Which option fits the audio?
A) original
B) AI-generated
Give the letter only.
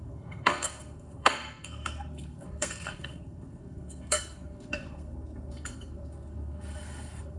B